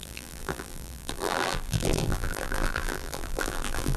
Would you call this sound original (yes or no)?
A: no